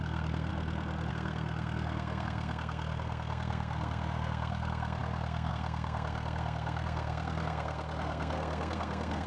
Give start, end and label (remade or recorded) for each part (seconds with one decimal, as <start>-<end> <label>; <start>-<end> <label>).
0.0-0.5 remade; 0.5-1.1 recorded; 1.1-9.3 remade